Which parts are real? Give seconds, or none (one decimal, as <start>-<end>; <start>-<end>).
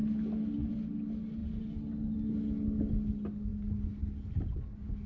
0.0-5.1